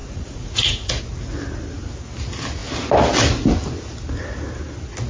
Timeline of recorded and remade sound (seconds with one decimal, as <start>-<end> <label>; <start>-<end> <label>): 0.0-1.0 remade; 1.0-5.1 recorded